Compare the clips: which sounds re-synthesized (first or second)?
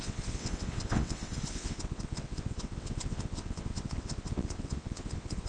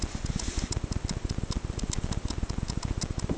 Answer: first